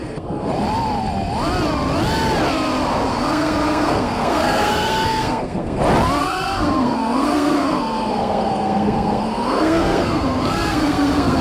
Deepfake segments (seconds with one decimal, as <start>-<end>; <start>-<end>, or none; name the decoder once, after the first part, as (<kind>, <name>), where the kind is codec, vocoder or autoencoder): 0.0-0.5 (codec, SNAC); 3.1-5.8; 6.2-11.4

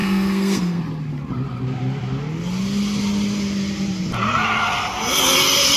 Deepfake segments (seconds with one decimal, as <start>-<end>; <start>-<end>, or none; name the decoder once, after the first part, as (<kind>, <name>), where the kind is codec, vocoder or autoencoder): 0.0-0.8 (codec, SNAC)